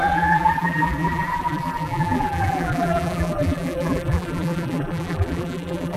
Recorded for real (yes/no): no